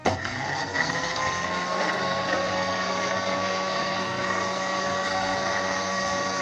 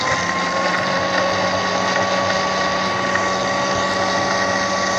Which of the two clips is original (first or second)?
second